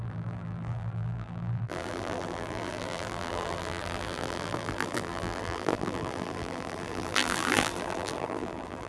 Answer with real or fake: fake